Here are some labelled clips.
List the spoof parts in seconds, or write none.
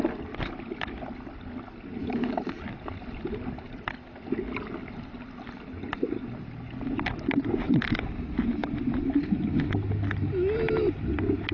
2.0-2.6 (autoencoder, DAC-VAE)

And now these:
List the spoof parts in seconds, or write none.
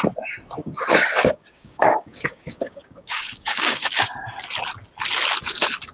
0.6-4.1 (codec, DAC)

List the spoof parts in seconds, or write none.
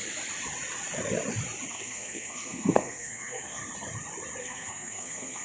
1.7-3.6 (codec, SNAC); 4.4-5.4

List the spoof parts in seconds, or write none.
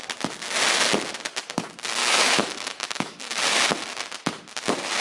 2.0-3.4 (autoencoder, DAC-VAE)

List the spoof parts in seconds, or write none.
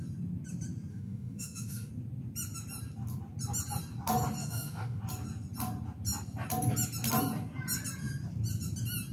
0.9-1.9 (autoencoder, DAC-VAE); 4.4-5.0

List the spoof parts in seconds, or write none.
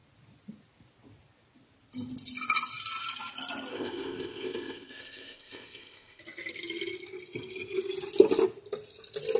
3.7-6.2 (codec, ZipCodec)